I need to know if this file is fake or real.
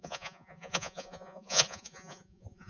fake